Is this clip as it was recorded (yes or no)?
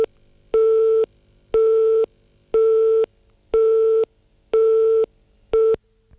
yes